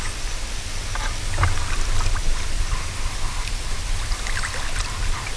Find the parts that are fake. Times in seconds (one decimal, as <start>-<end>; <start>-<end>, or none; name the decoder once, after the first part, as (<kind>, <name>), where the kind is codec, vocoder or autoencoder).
2.2-3.1 (vocoder, BigVGAN v2)